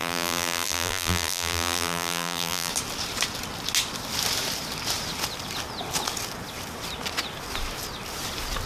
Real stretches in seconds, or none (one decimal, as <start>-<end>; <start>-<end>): 2.7-8.7

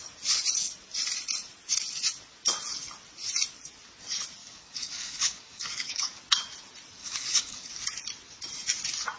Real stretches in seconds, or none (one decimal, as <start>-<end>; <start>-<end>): 0.0-4.4; 6.2-7.0; 7.7-9.2

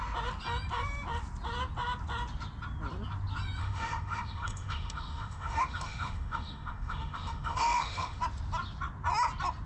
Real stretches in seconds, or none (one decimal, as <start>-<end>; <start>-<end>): 0.0-3.6; 8.2-9.7

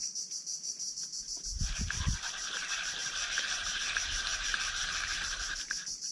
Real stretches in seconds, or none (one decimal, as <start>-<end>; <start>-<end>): 0.0-3.0; 5.6-6.1

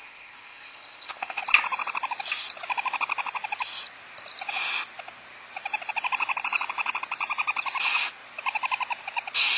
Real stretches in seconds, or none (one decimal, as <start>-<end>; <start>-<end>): 1.4-9.6

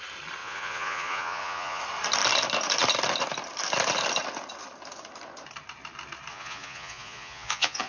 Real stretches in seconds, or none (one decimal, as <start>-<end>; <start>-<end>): 0.0-0.4; 1.8-6.3

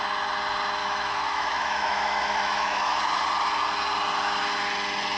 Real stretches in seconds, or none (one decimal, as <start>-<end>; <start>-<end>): 0.0-0.8; 3.0-5.2

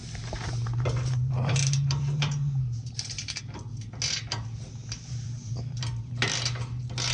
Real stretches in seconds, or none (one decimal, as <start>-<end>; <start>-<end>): 3.4-4.8; 6.1-7.1